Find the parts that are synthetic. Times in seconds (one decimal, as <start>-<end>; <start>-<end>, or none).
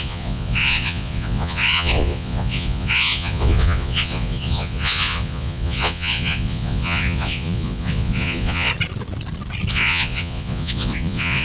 0.0-8.7; 9.7-11.4